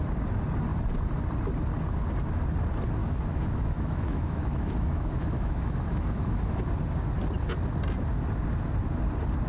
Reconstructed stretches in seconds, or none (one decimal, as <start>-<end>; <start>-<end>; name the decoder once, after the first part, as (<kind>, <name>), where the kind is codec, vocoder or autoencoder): 3.0-6.6 (autoencoder, DAC-VAE)